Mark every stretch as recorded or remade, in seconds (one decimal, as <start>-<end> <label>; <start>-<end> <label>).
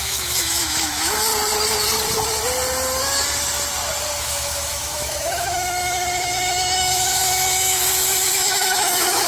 0.0-1.3 remade; 1.3-4.2 recorded; 4.2-9.3 remade